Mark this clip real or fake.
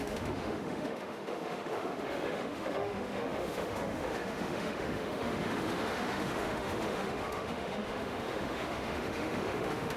fake